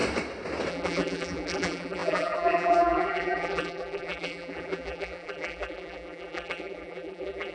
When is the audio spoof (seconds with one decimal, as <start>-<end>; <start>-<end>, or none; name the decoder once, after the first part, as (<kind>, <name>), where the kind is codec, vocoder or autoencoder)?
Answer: 0.7-7.5 (vocoder, BigVGAN v2)